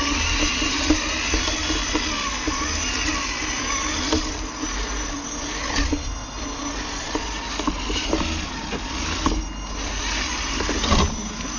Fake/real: real